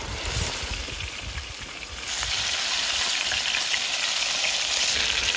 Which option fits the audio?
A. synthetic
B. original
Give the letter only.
B